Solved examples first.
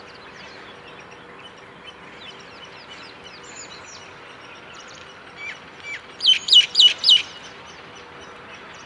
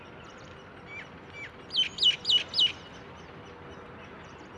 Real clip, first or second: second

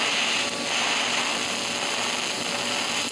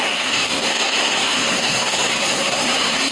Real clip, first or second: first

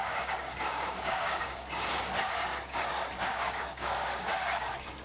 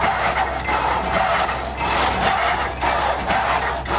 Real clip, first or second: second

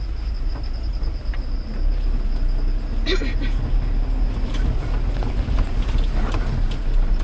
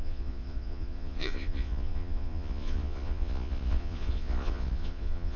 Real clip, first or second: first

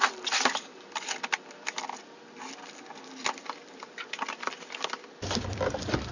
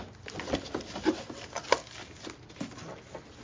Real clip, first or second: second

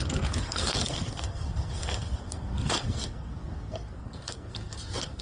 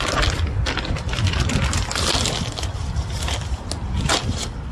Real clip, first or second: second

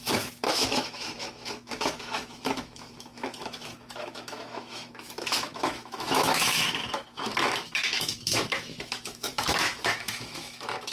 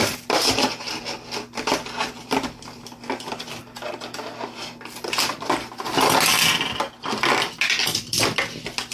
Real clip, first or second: second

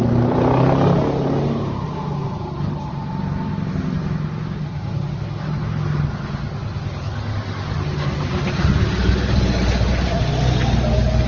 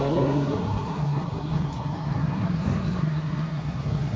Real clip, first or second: first